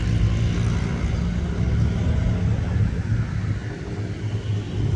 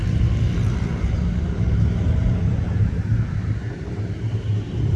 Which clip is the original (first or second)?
first